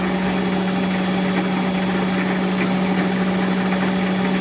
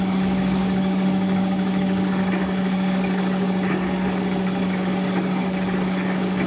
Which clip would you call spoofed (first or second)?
second